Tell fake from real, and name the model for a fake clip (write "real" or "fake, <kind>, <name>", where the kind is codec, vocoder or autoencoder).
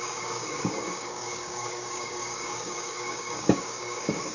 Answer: fake, codec, DAC